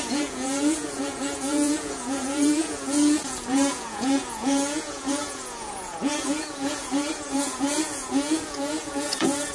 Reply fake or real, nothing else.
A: fake